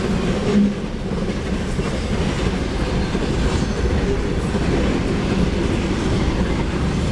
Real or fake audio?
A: real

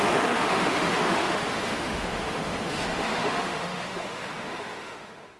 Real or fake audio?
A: fake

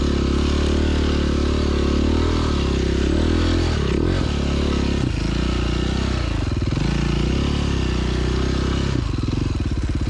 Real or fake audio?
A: real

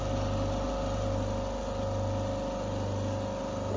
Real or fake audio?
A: real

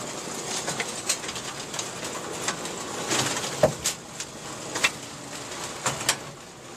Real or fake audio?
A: real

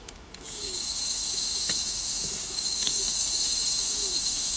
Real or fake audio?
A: fake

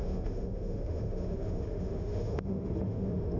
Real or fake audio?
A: fake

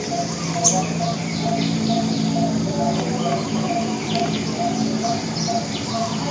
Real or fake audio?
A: real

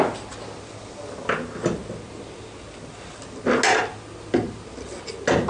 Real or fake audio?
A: real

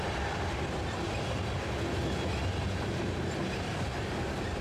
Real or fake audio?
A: real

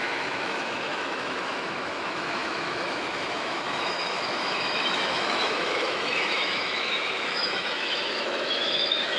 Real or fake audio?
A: fake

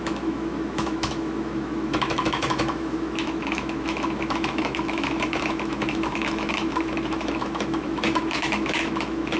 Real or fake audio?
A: fake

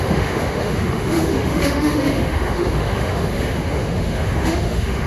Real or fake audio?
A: fake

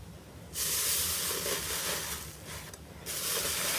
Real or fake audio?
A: real